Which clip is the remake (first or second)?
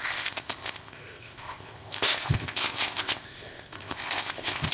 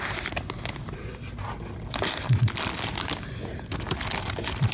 first